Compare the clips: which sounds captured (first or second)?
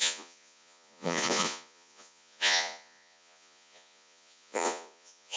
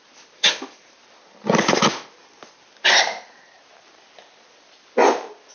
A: second